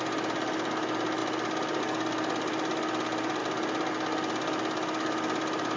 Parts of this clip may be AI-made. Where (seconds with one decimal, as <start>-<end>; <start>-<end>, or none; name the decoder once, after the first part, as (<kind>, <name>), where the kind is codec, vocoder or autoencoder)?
none